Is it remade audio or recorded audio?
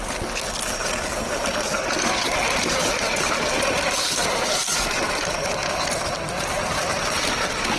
recorded